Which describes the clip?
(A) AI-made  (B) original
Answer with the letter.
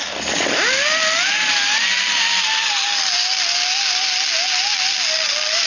B